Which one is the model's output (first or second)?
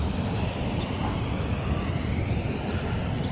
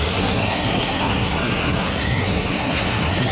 second